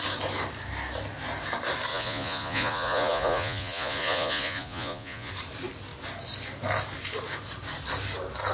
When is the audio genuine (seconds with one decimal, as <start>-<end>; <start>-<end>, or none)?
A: 0.0-1.9; 5.3-8.5